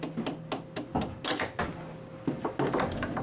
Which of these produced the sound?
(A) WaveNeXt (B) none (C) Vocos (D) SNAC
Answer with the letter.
B